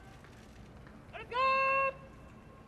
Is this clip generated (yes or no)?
no